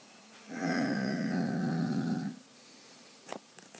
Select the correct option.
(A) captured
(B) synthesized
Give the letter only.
B